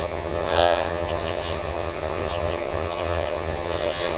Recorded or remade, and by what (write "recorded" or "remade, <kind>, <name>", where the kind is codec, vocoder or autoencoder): remade, vocoder, HiFi-GAN